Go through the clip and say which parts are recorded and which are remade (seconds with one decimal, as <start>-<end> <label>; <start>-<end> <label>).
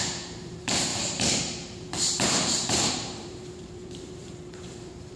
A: 0.0-5.2 remade